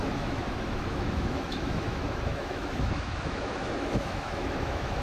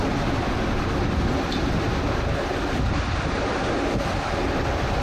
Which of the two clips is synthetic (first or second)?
first